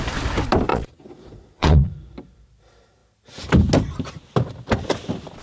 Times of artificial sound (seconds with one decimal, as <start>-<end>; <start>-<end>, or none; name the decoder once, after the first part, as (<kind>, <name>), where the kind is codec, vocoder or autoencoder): 0.7-1.9 (vocoder, Vocos)